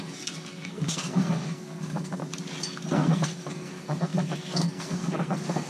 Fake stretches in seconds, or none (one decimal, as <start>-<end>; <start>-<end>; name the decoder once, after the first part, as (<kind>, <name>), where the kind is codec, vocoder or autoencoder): 0.0-2.2 (codec, SNAC); 2.9-5.7